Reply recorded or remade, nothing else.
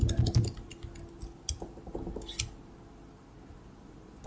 recorded